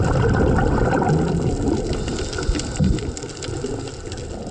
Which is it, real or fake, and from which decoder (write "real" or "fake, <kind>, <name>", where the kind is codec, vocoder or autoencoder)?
real